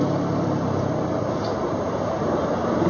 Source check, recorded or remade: recorded